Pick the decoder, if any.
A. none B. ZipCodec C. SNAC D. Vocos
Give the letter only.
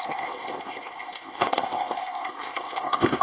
B